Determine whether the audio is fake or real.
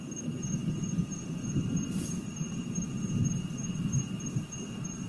fake